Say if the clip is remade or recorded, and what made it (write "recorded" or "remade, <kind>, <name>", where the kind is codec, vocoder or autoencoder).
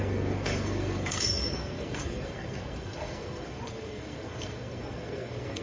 remade, codec, SNAC